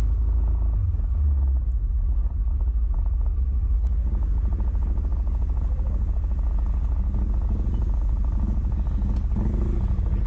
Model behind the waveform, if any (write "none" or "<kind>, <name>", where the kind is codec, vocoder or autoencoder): none